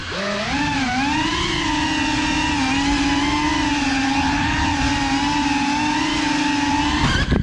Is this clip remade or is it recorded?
recorded